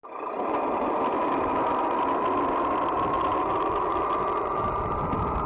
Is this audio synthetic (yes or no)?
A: no